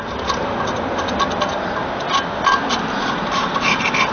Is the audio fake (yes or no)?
no